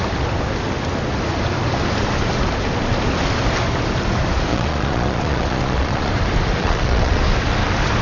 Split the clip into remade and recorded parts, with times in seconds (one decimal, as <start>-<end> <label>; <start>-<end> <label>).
0.0-4.5 recorded; 4.5-6.1 remade; 6.1-6.6 recorded; 6.6-7.2 remade; 7.2-8.0 recorded